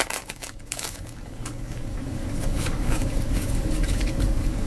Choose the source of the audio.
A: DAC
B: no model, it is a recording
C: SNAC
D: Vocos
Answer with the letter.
A